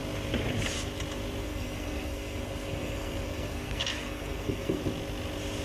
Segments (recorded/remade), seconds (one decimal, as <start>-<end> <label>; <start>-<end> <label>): 0.0-1.4 recorded; 1.4-4.8 remade; 4.8-5.6 recorded